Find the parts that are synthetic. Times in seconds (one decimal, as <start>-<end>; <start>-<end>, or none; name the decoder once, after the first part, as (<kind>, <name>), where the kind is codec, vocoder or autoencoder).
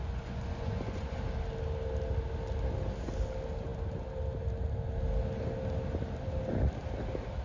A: 0.0-1.2 (vocoder, Vocos)